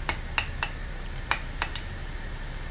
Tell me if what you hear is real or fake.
real